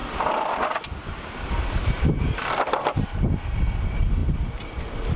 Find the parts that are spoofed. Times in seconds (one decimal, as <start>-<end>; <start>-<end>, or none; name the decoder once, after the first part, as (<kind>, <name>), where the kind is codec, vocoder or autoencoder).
none